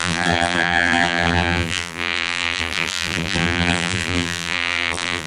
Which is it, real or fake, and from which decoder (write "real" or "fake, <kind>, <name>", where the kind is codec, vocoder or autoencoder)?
fake, vocoder, BigVGAN v2